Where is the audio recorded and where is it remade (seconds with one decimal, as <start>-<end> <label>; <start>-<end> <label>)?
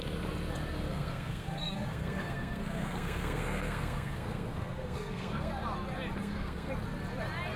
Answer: 0.0-0.9 recorded; 0.9-5.5 remade; 5.5-6.2 recorded; 6.2-6.7 remade; 6.7-7.6 recorded